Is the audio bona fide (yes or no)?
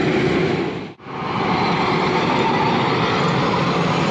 yes